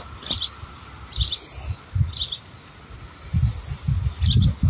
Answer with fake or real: real